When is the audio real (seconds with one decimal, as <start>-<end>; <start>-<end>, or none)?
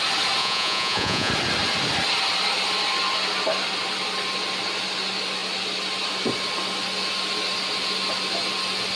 0.0-0.4; 1.3-9.0